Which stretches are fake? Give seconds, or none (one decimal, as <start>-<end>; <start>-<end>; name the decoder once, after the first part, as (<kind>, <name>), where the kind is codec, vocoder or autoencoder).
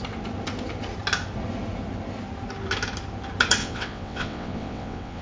3.6-5.2 (vocoder, WaveNeXt)